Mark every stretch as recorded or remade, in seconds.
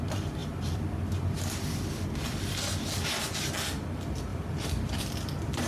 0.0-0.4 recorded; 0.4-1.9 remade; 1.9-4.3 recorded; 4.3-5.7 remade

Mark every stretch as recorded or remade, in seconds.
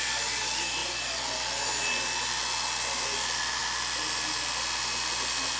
0.0-5.6 recorded